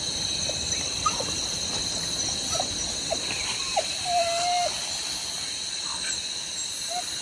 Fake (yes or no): no